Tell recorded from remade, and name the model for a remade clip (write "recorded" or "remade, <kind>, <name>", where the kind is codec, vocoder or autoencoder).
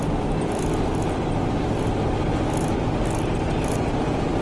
recorded